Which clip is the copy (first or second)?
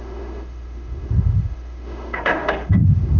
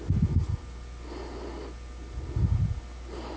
first